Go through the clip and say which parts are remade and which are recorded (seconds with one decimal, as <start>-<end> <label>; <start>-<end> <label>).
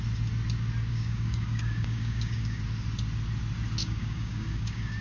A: 0.0-0.9 recorded; 0.9-2.6 remade; 2.6-3.8 recorded; 3.8-5.0 remade